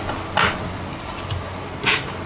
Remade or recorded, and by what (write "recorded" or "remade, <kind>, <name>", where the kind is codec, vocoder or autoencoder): recorded